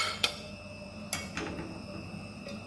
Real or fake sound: real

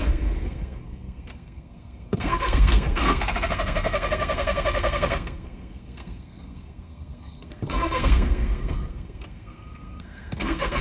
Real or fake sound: fake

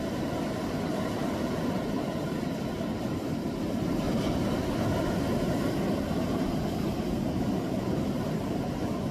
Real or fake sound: real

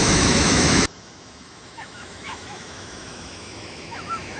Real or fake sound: fake